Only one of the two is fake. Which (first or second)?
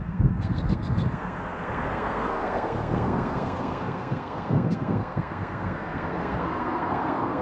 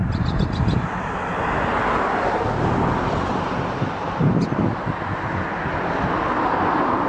first